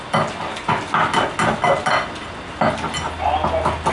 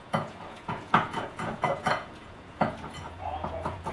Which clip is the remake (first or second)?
second